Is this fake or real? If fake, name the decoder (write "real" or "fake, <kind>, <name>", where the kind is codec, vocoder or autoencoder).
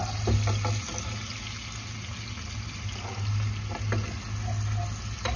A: real